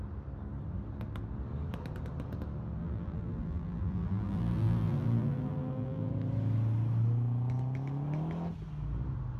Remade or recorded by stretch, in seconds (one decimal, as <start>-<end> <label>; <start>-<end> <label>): 0.0-2.8 recorded; 2.8-6.1 remade; 6.1-9.4 recorded